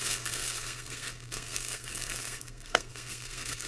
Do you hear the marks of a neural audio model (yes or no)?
yes